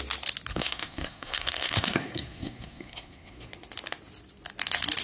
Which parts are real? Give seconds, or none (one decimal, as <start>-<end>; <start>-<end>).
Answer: 0.0-0.5; 3.5-5.0